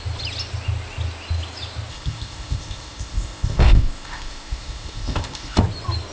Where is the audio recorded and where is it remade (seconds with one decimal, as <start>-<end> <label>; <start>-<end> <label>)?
0.0-1.9 recorded; 1.9-5.6 remade; 5.6-6.1 recorded